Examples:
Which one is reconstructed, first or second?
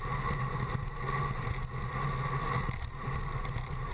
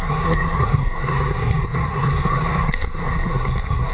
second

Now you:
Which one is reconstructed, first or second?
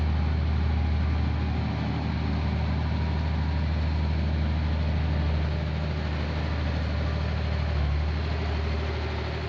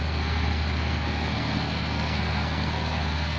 second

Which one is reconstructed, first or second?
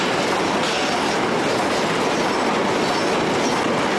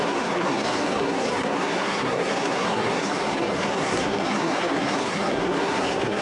second